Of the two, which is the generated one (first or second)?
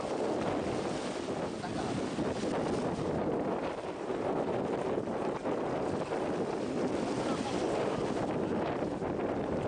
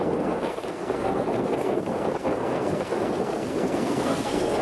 second